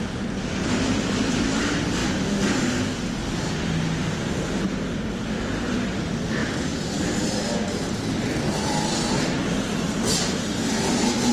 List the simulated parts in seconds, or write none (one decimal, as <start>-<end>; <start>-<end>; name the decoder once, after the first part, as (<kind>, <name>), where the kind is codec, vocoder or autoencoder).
none